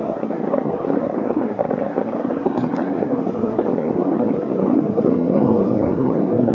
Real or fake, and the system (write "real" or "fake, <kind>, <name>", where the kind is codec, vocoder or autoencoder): fake, codec, SNAC